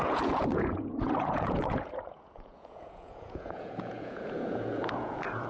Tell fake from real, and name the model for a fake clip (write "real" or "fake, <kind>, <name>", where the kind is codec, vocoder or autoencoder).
fake, vocoder, Vocos